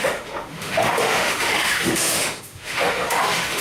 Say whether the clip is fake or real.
fake